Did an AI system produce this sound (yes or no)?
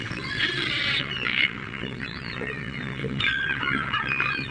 yes